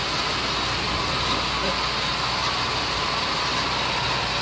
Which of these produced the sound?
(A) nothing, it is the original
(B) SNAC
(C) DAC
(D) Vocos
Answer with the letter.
A